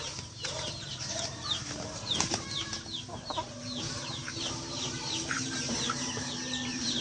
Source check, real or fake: fake